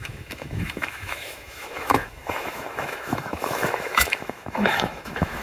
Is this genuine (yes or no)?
no